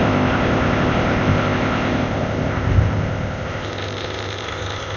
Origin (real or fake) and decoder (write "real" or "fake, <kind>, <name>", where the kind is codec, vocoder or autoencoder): fake, codec, ZipCodec